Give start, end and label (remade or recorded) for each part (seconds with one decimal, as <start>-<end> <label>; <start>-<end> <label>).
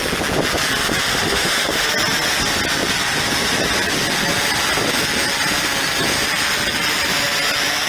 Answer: 0.0-1.1 recorded; 1.1-1.9 remade; 1.9-7.9 recorded